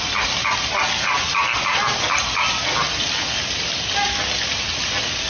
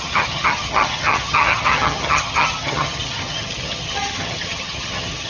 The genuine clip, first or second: first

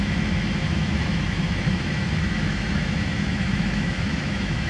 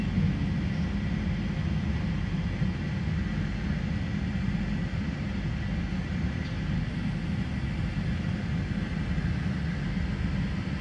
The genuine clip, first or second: second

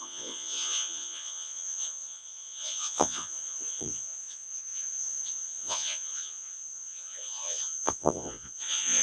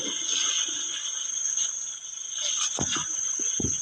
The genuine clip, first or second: second